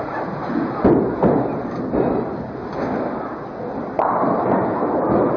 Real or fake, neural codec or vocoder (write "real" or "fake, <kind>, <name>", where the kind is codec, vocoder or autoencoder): real